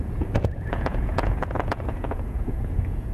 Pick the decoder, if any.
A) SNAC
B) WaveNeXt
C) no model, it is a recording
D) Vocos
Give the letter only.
D